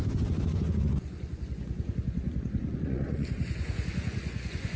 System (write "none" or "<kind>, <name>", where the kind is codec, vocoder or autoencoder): vocoder, Vocos